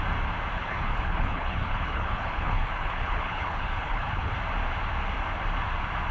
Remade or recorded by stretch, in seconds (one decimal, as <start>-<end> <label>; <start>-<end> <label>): 0.0-0.6 recorded; 0.6-4.3 remade; 4.3-6.1 recorded